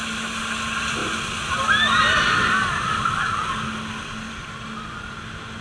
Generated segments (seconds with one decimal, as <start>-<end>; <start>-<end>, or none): none